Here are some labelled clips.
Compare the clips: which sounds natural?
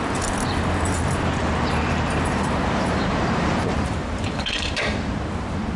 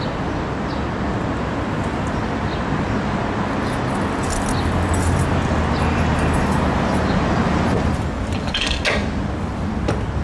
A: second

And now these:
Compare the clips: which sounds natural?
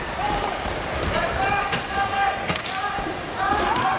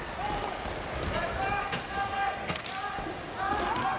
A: second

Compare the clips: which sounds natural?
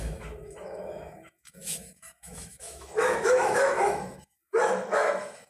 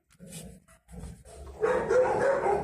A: second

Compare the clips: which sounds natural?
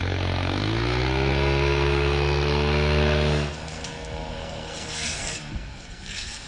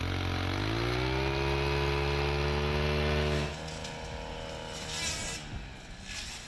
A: second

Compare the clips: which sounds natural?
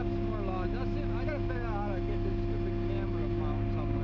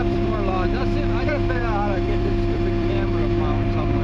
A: first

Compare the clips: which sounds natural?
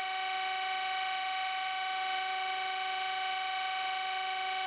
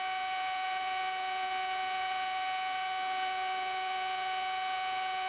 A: first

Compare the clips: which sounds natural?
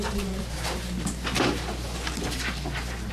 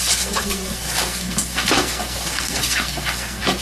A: first